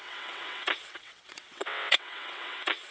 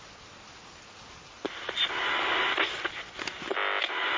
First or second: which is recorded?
second